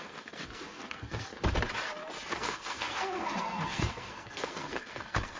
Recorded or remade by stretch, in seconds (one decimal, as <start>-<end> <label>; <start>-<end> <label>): 0.0-1.3 remade; 1.3-2.3 recorded; 2.3-5.4 remade